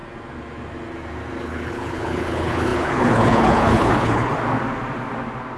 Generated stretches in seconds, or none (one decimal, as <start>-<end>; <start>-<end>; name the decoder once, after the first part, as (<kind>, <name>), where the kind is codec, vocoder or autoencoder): 1.4-4.3 (codec, HILCodec)